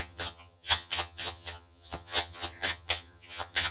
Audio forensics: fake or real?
fake